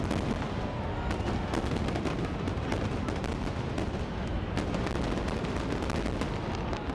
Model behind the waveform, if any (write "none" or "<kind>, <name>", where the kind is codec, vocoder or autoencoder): none